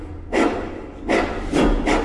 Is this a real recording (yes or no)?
yes